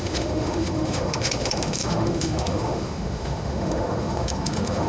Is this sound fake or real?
fake